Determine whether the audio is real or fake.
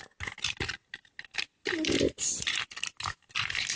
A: real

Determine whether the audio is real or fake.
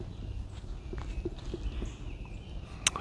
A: real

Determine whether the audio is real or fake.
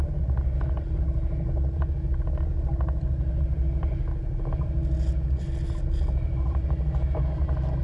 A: real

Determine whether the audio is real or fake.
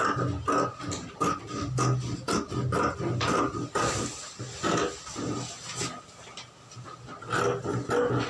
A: real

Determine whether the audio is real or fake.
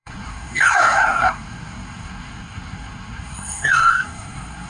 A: fake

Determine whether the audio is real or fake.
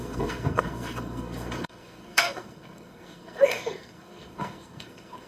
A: fake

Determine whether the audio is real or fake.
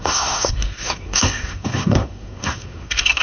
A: fake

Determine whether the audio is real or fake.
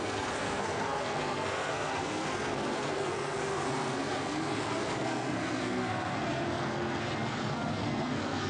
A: fake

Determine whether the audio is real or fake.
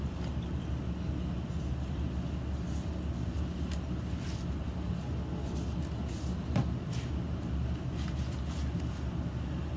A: real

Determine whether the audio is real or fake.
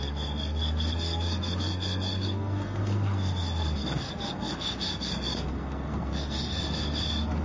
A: fake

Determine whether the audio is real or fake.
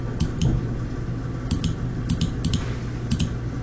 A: real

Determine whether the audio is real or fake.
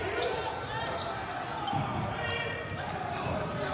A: real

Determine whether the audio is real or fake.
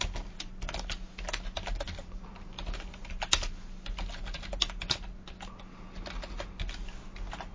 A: real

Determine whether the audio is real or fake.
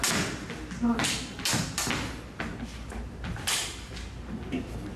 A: real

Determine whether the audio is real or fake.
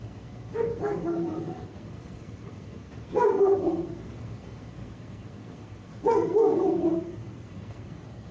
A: fake